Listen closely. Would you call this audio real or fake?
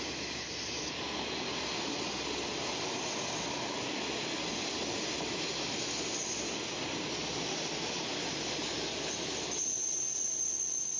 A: real